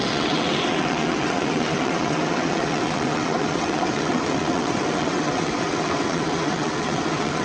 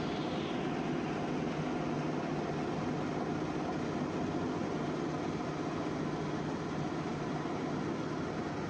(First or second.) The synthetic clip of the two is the first